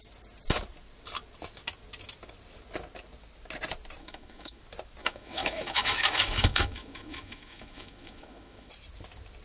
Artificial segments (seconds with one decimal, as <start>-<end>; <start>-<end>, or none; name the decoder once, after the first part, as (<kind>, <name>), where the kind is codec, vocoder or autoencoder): 4.0-4.6 (autoencoder, DAC-VAE); 5.0-8.7